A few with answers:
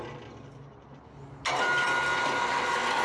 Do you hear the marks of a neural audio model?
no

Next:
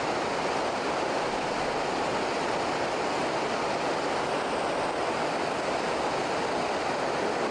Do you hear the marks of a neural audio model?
no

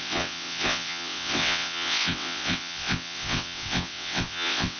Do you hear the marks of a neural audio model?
yes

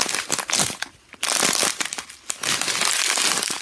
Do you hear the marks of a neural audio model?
no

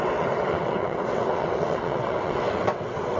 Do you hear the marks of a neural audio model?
yes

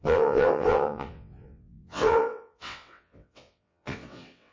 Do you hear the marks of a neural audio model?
yes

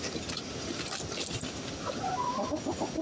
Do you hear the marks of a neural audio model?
no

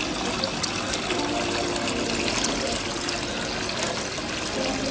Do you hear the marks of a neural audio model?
no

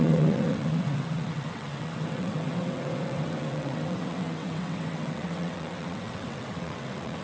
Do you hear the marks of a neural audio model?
yes